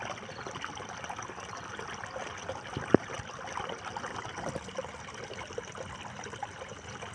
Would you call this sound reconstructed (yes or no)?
no